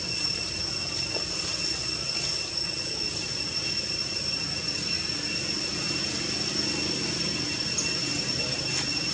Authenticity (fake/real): real